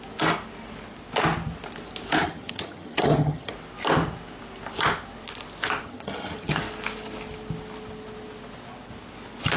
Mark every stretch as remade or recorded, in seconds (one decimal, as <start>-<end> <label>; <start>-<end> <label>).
0.0-2.2 recorded; 2.2-3.5 remade; 3.5-5.8 recorded; 5.8-6.6 remade; 6.6-9.6 recorded